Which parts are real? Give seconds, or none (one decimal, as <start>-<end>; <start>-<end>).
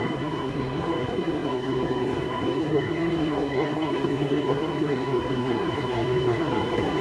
none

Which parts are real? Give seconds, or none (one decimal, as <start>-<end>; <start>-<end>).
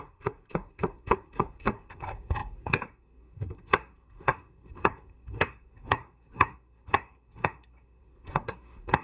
none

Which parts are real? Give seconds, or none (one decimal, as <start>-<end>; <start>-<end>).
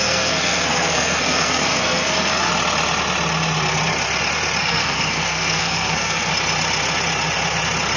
2.5-4.6; 6.3-8.0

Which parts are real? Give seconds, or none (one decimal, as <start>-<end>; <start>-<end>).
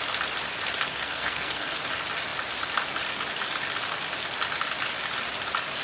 0.0-0.9; 1.8-5.8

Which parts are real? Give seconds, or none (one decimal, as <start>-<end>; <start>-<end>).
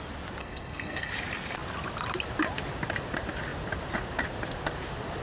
0.0-0.4; 1.1-5.2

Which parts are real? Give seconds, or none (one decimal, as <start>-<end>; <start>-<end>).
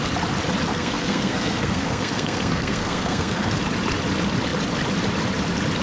0.0-0.7; 3.6-5.8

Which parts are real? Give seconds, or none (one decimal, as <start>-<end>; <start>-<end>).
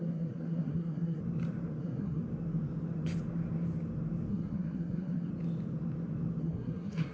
1.2-1.8; 2.2-4.3; 5.3-6.4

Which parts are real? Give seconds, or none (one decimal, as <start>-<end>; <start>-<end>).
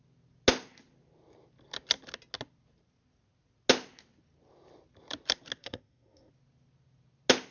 0.0-5.6; 6.3-7.5